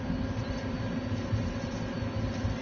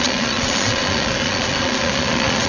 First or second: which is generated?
second